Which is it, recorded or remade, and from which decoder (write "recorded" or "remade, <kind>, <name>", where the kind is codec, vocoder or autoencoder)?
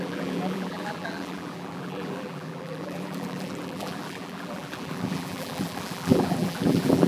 remade, vocoder, BigVGAN v2